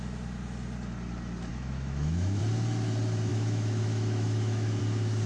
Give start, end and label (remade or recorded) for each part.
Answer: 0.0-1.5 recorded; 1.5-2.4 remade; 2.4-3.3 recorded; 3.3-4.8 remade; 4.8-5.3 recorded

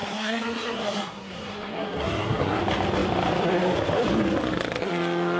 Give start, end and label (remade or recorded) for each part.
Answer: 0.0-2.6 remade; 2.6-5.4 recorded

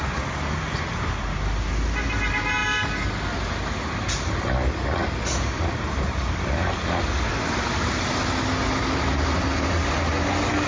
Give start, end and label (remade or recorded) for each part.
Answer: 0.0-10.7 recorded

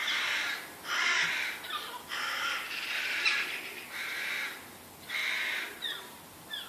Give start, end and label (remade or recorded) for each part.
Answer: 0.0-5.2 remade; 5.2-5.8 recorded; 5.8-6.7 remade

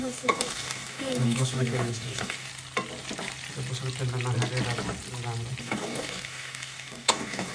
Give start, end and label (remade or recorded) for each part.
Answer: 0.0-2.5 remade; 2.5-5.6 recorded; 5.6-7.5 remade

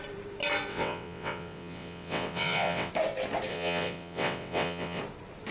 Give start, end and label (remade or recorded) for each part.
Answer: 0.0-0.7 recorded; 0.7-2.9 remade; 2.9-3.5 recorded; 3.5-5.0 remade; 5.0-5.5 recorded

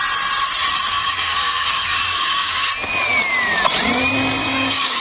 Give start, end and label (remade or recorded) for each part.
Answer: 0.0-0.9 recorded; 0.9-2.7 remade; 2.7-4.4 recorded; 4.4-5.0 remade

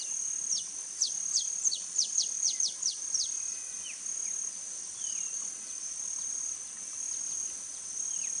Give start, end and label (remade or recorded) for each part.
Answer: 0.0-8.4 recorded